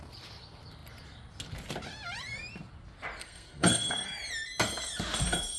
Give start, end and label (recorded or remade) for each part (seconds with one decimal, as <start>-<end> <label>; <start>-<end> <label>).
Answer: 0.0-3.2 recorded; 3.2-3.9 remade; 3.9-5.6 recorded